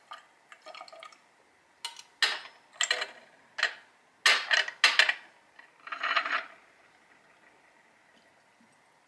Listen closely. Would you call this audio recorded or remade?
recorded